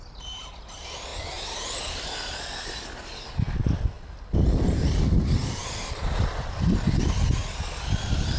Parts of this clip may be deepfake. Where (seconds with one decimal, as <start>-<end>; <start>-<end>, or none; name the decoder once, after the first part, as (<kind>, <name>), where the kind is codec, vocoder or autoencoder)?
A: 1.1-1.8 (vocoder, BigVGAN v2); 5.6-6.5